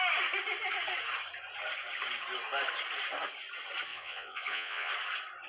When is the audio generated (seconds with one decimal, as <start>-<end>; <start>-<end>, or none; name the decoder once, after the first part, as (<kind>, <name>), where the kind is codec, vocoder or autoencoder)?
3.9-4.9 (vocoder, Vocos)

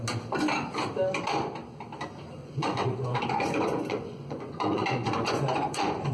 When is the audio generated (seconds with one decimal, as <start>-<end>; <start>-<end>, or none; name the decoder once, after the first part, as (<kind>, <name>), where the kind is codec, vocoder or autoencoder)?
2.4-6.1 (vocoder, Vocos)

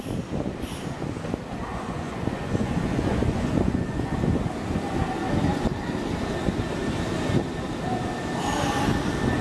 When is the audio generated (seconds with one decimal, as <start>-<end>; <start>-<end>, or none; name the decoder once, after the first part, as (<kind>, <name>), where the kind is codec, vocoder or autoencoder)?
1.7-4.3 (vocoder, Vocos)

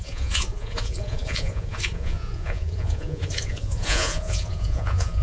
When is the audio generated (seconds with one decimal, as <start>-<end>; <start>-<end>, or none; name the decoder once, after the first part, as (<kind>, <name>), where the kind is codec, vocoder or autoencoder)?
0.0-5.2 (vocoder, Vocos)

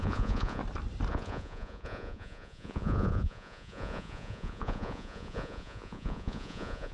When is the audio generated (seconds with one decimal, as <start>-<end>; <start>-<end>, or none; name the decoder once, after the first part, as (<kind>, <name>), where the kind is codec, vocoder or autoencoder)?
0.0-0.6 (vocoder, Vocos); 1.1-6.9

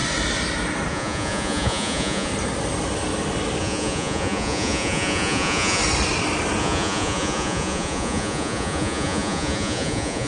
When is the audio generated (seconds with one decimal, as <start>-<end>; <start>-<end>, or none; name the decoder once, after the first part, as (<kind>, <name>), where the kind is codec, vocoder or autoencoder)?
0.9-2.3 (vocoder, Vocos); 3.6-5.8; 6.6-10.3

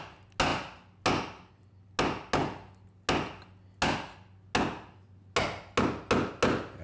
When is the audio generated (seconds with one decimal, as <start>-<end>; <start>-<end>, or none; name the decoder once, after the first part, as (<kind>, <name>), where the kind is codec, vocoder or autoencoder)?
none